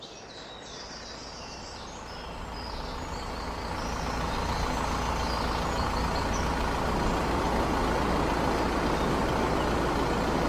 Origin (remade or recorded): recorded